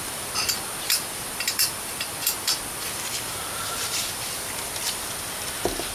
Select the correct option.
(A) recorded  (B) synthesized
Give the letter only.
B